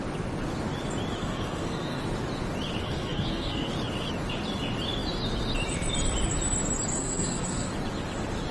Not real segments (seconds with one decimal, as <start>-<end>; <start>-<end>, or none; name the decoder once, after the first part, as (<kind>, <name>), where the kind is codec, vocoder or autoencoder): 1.2-2.0 (codec, SNAC); 2.8-3.7; 6.9-7.7